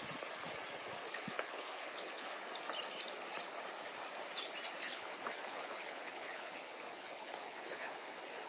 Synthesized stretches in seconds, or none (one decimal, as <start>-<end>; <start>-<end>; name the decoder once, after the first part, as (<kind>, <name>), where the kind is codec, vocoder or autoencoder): 1.0-2.4 (codec, HILCodec); 4.8-8.5